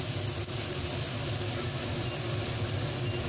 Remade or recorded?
recorded